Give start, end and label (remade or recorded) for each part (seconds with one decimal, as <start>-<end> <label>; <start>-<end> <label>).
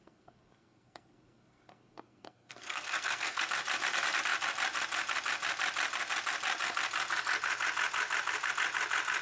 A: 0.0-3.4 remade; 3.4-9.2 recorded